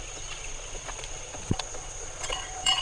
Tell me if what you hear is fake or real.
fake